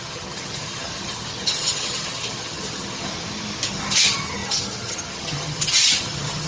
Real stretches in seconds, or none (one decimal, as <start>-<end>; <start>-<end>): 3.1-3.7